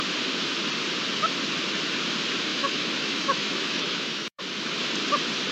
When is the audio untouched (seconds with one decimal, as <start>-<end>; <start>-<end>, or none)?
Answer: 0.0-2.5; 4.4-5.5